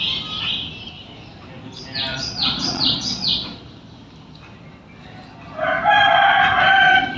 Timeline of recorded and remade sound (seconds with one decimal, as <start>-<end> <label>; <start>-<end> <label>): 0.0-2.1 recorded; 2.1-3.6 remade; 3.6-7.2 recorded